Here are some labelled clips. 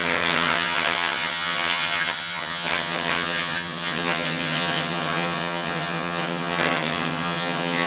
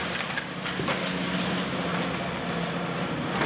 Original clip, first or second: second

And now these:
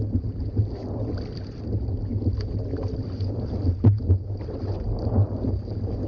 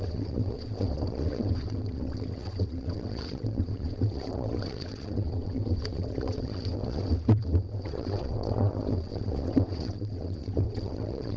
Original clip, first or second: first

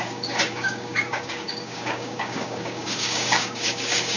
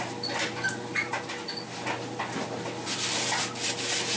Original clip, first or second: second